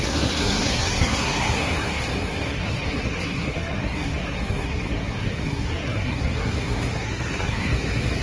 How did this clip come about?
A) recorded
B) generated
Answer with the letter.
B